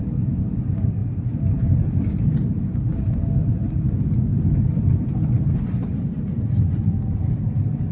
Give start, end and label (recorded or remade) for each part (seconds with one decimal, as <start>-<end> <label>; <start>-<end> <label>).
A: 0.0-7.9 recorded